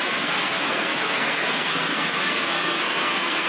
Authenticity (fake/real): fake